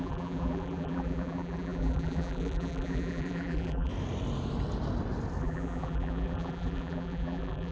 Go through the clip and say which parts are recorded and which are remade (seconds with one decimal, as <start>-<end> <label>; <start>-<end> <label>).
0.0-3.9 remade; 3.9-5.4 recorded; 5.4-7.7 remade

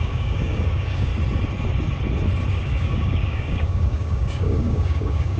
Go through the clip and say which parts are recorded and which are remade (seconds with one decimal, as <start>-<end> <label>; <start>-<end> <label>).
0.0-1.1 remade; 1.1-2.5 recorded; 2.5-5.4 remade